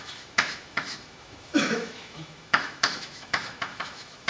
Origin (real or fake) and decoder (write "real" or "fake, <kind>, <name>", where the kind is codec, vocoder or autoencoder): fake, autoencoder, DAC-VAE